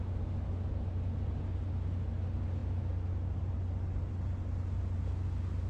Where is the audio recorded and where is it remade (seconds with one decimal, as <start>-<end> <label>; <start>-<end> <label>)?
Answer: 0.0-5.7 recorded